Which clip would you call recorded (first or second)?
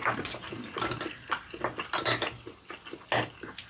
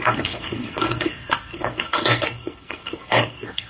first